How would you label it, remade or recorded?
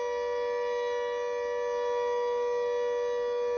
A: recorded